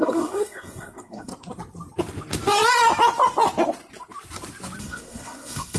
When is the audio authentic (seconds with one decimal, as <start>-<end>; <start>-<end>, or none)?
1.3-4.8